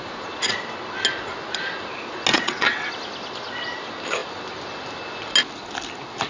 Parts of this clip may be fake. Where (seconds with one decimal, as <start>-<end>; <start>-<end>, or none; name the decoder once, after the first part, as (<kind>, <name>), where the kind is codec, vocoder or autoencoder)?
2.3-2.9 (vocoder, WaveNeXt)